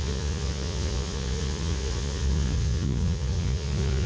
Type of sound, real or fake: fake